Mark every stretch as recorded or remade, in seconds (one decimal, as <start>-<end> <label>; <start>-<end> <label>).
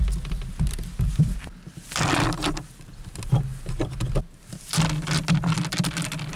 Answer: 0.0-6.4 recorded